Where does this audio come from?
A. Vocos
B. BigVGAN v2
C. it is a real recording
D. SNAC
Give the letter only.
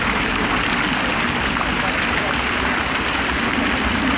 C